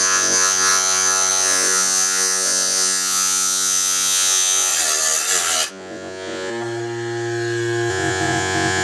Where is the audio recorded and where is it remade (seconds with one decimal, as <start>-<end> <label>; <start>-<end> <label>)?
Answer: 0.0-4.7 remade; 4.7-5.7 recorded; 5.7-6.5 remade; 6.5-7.9 recorded; 7.9-8.8 remade